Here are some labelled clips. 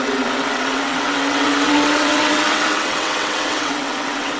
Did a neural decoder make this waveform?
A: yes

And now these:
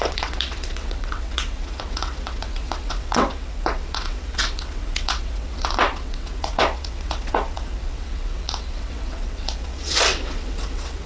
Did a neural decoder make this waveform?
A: yes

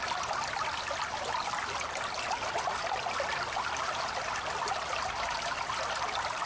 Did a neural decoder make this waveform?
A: no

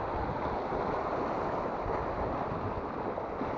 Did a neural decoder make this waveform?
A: no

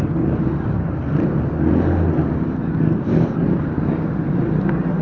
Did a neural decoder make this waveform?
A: no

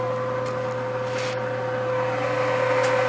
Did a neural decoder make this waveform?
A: no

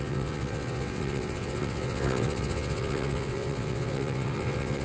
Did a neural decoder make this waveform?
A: yes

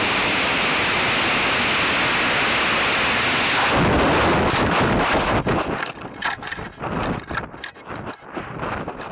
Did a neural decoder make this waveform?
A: no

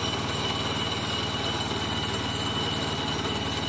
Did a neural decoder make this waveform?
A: no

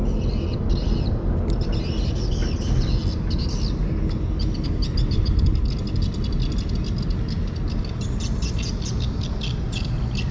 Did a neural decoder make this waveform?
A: no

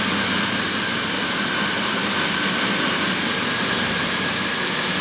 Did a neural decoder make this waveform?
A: no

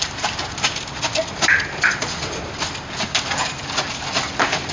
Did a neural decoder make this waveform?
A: no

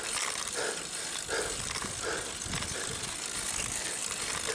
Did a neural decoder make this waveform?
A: no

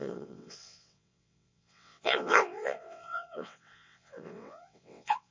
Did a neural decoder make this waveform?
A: yes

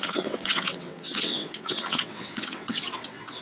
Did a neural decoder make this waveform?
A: yes